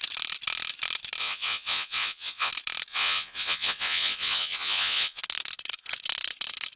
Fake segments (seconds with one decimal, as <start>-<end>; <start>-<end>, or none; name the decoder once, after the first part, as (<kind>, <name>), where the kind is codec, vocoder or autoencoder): 1.2-2.5 (vocoder, Vocos); 2.9-5.2